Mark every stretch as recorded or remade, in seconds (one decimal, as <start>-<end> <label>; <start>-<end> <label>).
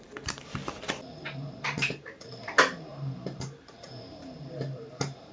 0.0-0.6 remade; 0.6-1.1 recorded; 1.1-5.3 remade